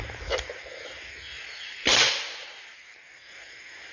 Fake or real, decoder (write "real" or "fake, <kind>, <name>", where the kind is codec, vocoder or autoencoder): real